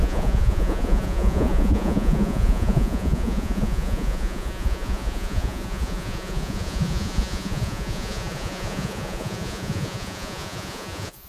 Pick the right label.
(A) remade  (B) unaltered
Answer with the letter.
A